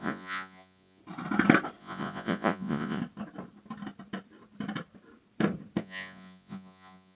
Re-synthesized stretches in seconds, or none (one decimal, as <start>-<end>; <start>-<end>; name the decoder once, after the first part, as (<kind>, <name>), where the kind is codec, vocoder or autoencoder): 0.0-1.0 (vocoder, Vocos); 1.8-3.0; 5.8-7.1